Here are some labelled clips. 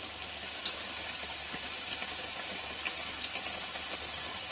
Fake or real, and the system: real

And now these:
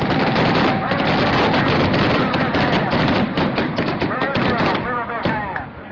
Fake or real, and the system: fake, vocoder, BigVGAN v2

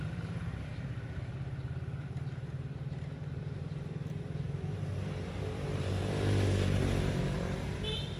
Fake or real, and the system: fake, vocoder, BigVGAN v2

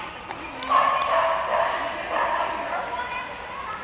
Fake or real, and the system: real